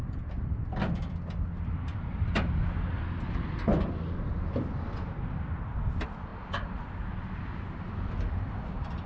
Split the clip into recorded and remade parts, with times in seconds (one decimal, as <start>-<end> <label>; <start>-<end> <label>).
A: 0.0-9.1 recorded